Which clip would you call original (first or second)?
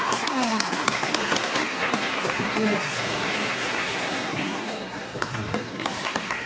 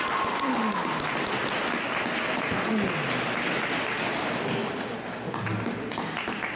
second